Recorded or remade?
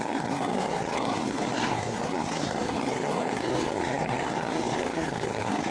remade